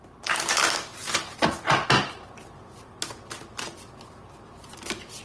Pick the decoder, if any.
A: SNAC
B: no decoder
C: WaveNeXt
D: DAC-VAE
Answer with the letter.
B